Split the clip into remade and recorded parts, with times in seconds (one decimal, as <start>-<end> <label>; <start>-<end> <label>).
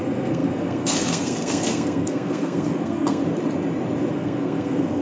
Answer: 0.0-3.2 remade; 3.2-4.1 recorded; 4.1-5.0 remade